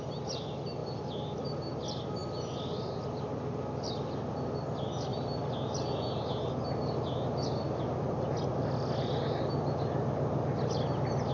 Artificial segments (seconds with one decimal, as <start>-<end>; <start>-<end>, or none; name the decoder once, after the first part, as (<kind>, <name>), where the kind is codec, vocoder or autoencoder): none